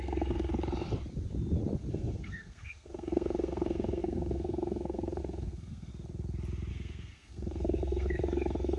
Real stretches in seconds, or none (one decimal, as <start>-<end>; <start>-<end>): 0.5-1.9; 5.9-6.7